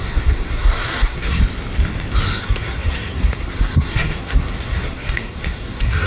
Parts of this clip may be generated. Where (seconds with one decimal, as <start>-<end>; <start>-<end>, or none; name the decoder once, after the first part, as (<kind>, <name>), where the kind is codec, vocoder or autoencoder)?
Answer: 0.0-1.4 (codec, SNAC); 2.4-6.1